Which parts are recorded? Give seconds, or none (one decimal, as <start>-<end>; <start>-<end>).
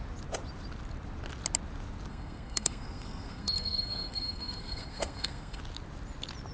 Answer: 0.0-2.1; 5.6-6.5